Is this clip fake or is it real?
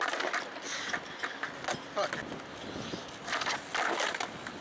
real